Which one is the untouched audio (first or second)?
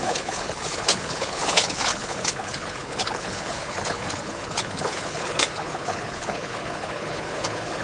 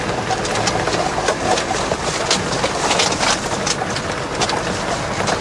second